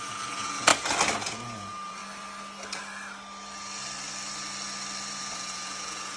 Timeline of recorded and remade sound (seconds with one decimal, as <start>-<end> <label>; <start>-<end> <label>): 0.0-0.7 remade; 0.7-1.2 recorded; 1.2-2.0 remade; 2.0-5.2 recorded; 5.2-6.2 remade